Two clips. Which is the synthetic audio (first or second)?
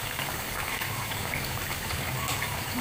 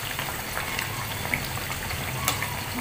first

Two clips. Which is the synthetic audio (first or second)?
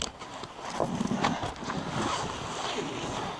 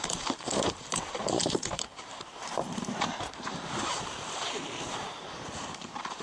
second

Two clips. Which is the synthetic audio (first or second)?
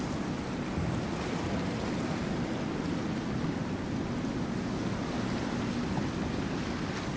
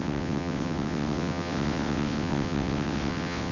second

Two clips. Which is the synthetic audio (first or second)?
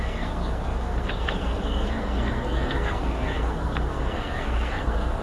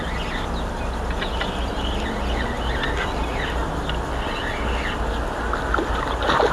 first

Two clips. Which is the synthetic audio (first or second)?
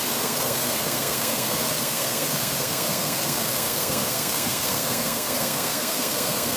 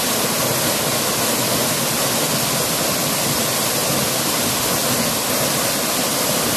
first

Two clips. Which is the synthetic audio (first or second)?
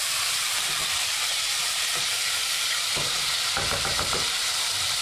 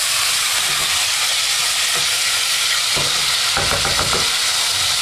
first